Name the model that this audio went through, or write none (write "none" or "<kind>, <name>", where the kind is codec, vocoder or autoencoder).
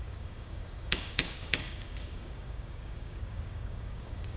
codec, DAC